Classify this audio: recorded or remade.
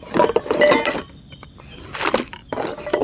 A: recorded